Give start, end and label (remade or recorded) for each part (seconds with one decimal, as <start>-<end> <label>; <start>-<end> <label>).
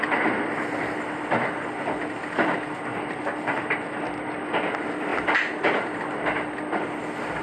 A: 0.0-7.4 recorded